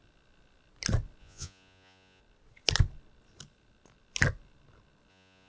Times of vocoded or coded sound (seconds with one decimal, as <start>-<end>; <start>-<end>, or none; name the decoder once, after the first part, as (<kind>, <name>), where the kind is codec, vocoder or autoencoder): 1.2-2.2 (vocoder, Vocos); 5.1-5.5